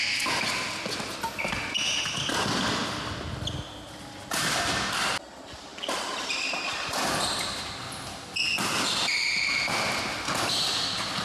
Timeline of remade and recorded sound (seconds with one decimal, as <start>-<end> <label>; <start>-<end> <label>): 0.0-11.2 recorded